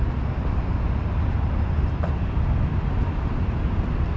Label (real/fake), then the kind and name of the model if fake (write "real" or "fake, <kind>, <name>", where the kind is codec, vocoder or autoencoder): real